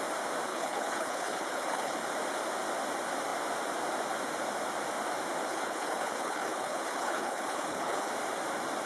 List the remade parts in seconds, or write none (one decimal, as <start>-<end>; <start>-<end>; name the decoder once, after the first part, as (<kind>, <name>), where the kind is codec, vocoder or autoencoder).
0.5-2.0 (codec, HILCodec); 5.5-8.1